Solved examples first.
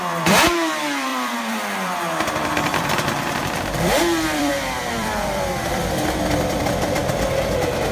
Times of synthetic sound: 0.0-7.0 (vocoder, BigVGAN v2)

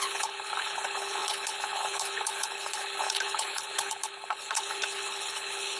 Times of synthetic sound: 0.0-5.8 (codec, HILCodec)

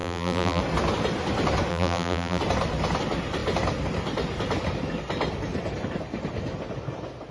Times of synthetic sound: 0.0-0.6 (vocoder, BigVGAN v2); 1.7-2.4

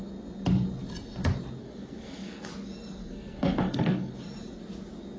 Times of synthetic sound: 1.6-2.5 (codec, SNAC); 3.0-4.1

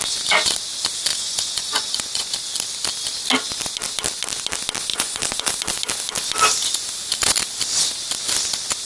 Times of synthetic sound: 1.1-2.3 (vocoder, Vocos); 4.9-5.5

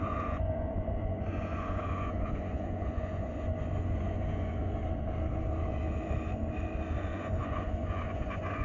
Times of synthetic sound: 0.0-4.8 (vocoder, Vocos); 7.0-8.6

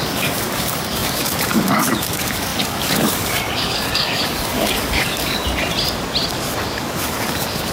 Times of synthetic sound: 0.0-5.4 (codec, DAC); 6.3-7.7